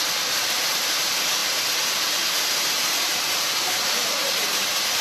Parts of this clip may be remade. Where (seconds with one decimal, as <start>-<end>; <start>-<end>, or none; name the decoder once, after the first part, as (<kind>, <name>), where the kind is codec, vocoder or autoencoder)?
0.0-5.0 (vocoder, BigVGAN v2)